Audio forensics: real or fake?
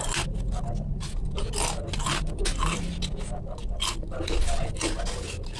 real